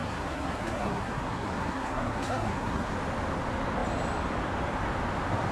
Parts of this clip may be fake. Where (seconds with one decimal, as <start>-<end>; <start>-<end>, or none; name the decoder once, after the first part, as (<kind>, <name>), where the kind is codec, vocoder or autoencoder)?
0.0-2.9 (codec, SNAC)